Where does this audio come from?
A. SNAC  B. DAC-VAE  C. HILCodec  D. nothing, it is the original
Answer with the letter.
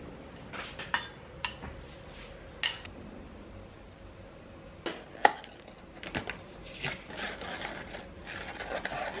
D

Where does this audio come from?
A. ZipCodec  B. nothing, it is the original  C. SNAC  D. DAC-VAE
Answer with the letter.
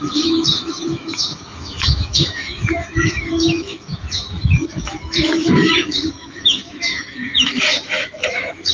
D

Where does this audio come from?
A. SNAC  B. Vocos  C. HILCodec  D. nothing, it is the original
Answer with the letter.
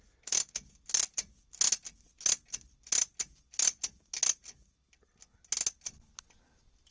D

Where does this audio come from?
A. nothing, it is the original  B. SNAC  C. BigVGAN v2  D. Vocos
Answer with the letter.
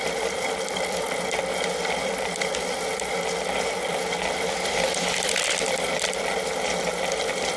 A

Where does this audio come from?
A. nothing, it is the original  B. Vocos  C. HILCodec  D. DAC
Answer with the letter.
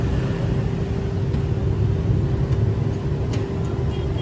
A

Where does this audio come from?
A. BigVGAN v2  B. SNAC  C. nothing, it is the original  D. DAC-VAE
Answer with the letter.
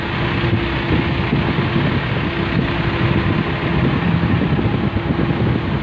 C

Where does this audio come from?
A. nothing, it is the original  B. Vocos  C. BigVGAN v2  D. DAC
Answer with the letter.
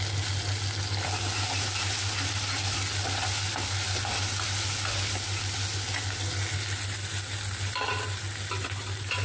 A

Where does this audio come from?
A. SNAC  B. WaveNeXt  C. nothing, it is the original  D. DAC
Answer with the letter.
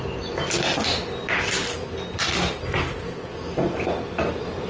C